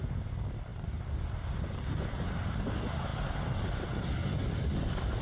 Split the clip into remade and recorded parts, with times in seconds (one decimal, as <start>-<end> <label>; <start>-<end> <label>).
0.0-5.2 recorded